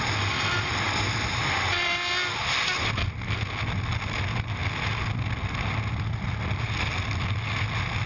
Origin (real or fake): real